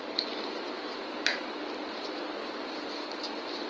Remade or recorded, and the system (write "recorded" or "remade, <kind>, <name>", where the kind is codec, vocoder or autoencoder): recorded